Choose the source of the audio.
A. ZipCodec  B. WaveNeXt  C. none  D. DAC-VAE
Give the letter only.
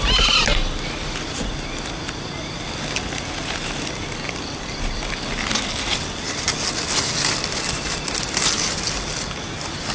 C